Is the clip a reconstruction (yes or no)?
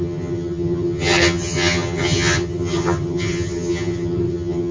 yes